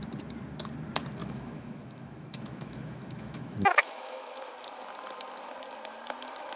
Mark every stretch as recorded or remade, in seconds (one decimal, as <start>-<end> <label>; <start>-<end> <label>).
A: 0.0-1.2 recorded; 1.2-4.5 remade; 4.5-6.6 recorded